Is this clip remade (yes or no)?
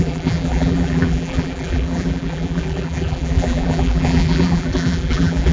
yes